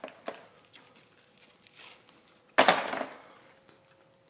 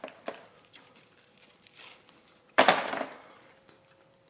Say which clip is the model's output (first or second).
second